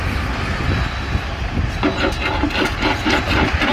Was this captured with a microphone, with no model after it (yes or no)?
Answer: yes